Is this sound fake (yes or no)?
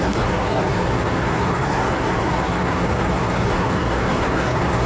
yes